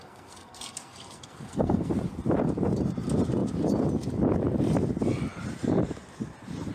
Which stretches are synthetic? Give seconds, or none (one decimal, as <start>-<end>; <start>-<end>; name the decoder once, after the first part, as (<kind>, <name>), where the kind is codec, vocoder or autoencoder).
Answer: 0.0-1.9 (codec, SNAC)